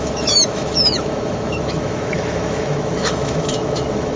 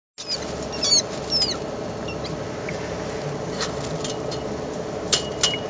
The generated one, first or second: first